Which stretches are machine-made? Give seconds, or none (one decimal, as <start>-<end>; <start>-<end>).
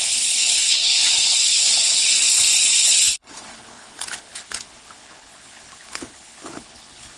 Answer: 0.0-7.2